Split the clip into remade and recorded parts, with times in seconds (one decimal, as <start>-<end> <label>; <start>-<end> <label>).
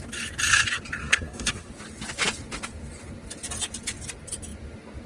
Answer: 0.0-1.0 recorded; 1.0-1.7 remade; 1.7-5.1 recorded